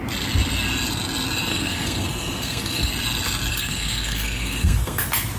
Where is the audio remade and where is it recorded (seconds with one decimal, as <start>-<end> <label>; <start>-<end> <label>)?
0.0-1.5 recorded; 1.5-2.9 remade; 2.9-3.5 recorded; 3.5-5.0 remade; 5.0-5.4 recorded